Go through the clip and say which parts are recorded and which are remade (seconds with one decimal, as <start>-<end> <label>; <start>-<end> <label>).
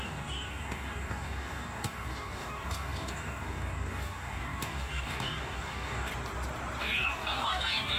0.0-6.1 remade; 6.1-6.8 recorded; 6.8-8.0 remade